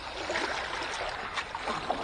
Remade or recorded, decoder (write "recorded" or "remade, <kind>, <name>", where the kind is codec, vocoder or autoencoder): recorded